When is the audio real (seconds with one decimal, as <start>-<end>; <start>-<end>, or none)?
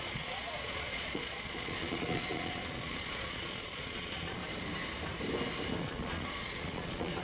4.4-5.8